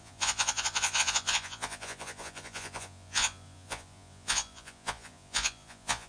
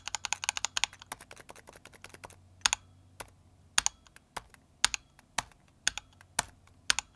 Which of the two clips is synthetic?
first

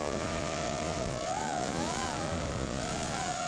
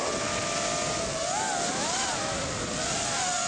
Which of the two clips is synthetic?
first